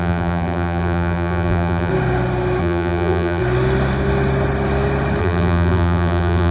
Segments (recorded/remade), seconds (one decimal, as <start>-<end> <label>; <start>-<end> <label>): 0.0-1.9 remade; 1.9-2.6 recorded; 2.6-3.4 remade; 3.4-5.2 recorded; 5.2-6.5 remade